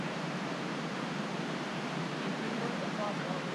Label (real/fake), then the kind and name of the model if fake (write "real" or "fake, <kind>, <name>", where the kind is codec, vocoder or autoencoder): fake, vocoder, BigVGAN v2